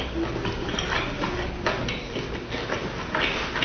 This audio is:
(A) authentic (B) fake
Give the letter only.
A